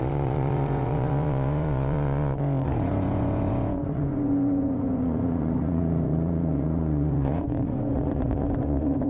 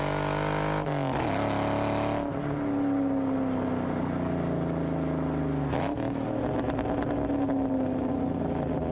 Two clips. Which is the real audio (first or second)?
second